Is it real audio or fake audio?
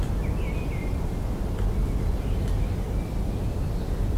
real